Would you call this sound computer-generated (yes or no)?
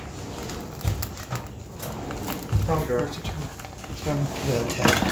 no